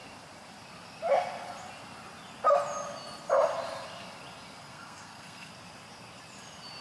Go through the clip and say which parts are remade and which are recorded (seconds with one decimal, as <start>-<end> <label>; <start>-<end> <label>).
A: 0.0-4.7 recorded; 4.7-5.5 remade; 5.5-6.8 recorded